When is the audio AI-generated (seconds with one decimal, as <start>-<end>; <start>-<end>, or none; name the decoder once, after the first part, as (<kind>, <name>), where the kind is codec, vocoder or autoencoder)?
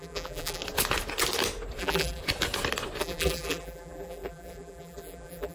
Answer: 0.0-0.6 (vocoder, BigVGAN v2); 1.8-2.2; 3.0-5.5